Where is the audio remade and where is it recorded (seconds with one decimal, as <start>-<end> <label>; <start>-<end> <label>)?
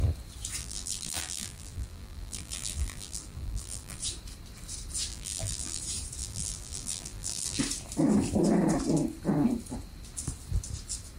0.0-0.6 recorded; 0.6-4.0 remade; 4.0-5.1 recorded; 5.1-5.8 remade; 5.8-6.2 recorded; 6.2-7.6 remade; 7.6-11.2 recorded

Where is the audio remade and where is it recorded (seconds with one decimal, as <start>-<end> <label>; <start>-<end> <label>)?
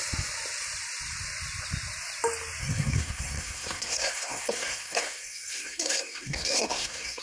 0.0-2.6 recorded; 2.6-7.2 remade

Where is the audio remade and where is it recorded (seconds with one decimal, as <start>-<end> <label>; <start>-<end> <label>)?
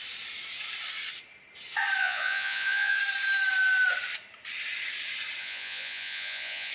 0.0-2.0 recorded; 2.0-3.0 remade; 3.0-5.4 recorded; 5.4-6.7 remade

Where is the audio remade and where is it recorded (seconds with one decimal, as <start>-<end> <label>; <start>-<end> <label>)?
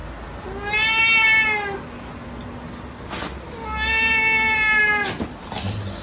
0.0-6.0 recorded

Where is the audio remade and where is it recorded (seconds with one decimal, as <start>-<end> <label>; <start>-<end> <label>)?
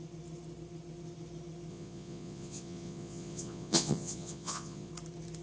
0.0-1.7 recorded; 1.7-4.9 remade; 4.9-5.4 recorded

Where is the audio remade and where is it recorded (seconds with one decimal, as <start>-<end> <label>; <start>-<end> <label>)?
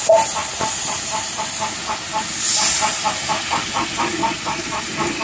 0.0-4.2 recorded; 4.2-4.8 remade; 4.8-5.2 recorded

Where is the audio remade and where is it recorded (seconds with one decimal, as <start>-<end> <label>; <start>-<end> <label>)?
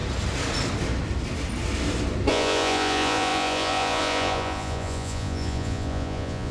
0.0-2.3 recorded; 2.3-6.5 remade